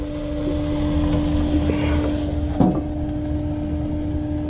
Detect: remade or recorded recorded